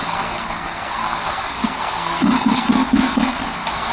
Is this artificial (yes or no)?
yes